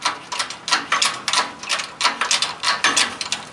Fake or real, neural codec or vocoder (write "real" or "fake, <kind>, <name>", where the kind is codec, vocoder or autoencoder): real